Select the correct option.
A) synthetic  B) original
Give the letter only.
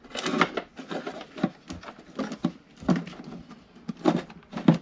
B